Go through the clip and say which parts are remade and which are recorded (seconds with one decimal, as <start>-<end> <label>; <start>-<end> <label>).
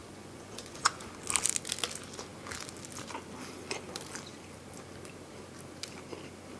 0.0-1.1 remade; 1.1-6.6 recorded